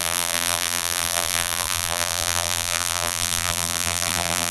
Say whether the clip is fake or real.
fake